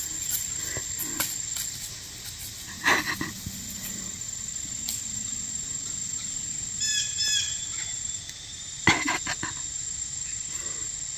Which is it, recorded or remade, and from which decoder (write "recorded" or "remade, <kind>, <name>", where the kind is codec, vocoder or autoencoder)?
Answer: recorded